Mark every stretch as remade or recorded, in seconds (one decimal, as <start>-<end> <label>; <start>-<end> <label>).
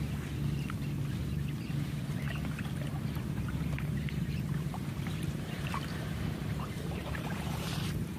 0.0-2.9 recorded; 2.9-8.2 remade